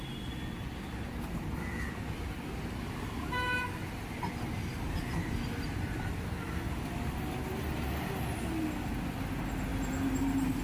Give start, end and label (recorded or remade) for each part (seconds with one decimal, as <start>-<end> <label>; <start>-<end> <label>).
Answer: 0.0-10.6 recorded